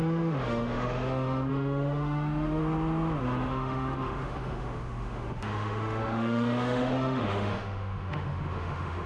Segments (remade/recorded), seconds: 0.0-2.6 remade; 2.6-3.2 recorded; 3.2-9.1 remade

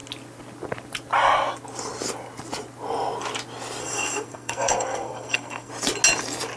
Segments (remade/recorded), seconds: 0.0-3.8 recorded; 3.8-5.7 remade; 5.7-6.6 recorded

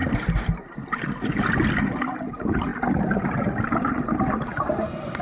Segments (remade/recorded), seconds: 0.0-5.2 recorded

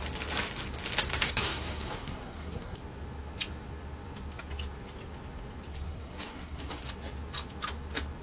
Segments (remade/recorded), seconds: 0.0-1.2 recorded; 1.2-2.8 remade; 2.8-5.7 recorded; 5.7-6.9 remade; 6.9-8.2 recorded

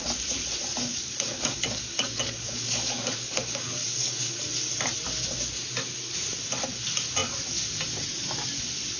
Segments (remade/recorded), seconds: 0.0-0.9 recorded; 0.9-4.3 remade; 4.3-9.0 recorded

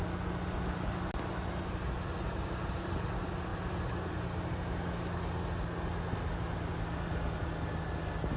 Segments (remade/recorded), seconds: 0.0-8.4 recorded

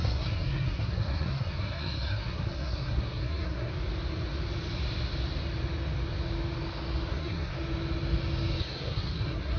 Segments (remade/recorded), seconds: 0.0-3.7 remade; 3.7-7.1 recorded; 7.1-7.5 remade; 7.5-8.6 recorded; 8.6-9.6 remade

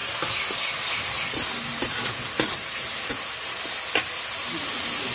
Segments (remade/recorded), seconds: 0.0-5.1 recorded